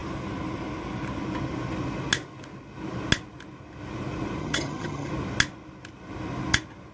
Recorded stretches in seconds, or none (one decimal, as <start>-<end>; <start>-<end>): 0.0-4.4; 5.1-6.9